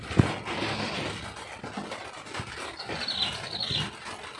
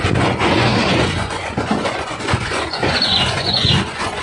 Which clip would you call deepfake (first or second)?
second